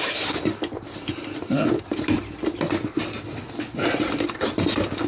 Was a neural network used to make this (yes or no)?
no